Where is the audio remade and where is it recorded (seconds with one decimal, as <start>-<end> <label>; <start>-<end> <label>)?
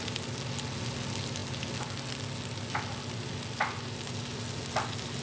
0.0-5.2 recorded